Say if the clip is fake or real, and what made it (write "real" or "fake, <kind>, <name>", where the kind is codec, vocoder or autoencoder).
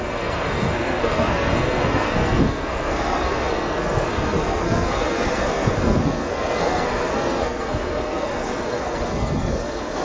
fake, codec, SNAC